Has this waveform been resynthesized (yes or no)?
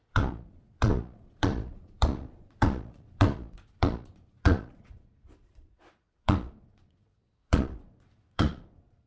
yes